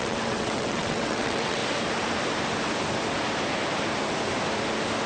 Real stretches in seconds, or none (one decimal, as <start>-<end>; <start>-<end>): 1.6-5.1